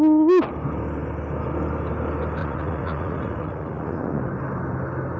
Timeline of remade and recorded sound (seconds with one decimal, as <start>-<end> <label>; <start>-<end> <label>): 0.0-2.4 recorded; 2.4-4.2 remade; 4.2-5.2 recorded

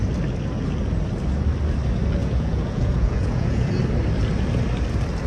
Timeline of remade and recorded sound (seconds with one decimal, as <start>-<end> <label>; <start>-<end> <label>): 0.0-2.2 recorded; 2.2-3.7 remade; 3.7-5.3 recorded

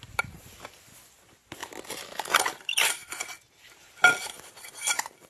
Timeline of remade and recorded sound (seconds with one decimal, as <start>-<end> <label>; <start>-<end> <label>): 0.0-1.6 remade; 1.6-2.4 recorded; 2.4-3.0 remade; 3.0-3.9 recorded; 3.9-5.3 remade

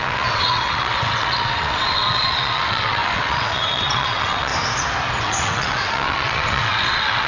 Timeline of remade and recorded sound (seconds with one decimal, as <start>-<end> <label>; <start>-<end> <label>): 0.0-4.5 remade; 4.5-5.2 recorded; 5.2-7.3 remade

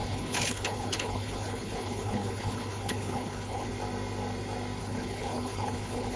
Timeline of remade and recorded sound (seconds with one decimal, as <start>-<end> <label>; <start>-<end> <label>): 0.0-3.7 remade; 3.7-4.8 recorded; 4.8-6.2 remade